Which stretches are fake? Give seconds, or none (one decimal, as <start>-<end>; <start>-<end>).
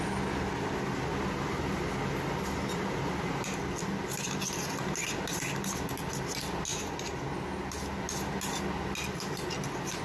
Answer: none